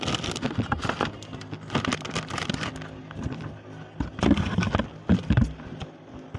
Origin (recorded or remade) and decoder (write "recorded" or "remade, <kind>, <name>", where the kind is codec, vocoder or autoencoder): recorded